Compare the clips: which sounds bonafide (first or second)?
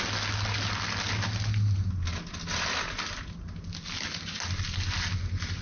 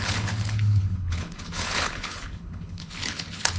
first